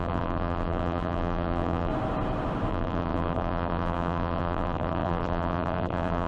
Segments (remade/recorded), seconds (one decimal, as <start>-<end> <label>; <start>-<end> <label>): 0.0-1.9 remade; 1.9-2.7 recorded; 2.7-6.3 remade